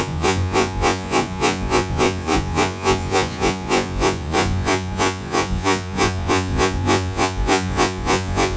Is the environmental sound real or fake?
fake